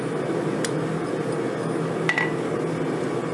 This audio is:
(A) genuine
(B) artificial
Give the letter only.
A